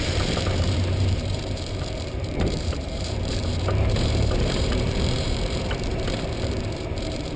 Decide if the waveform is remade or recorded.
remade